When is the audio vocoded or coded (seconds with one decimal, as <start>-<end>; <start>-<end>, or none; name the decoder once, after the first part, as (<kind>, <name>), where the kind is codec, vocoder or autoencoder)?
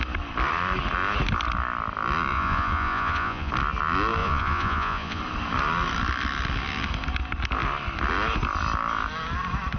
2.3-3.5 (vocoder, Vocos); 4.2-5.2